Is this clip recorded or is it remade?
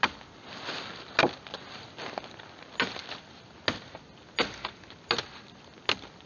recorded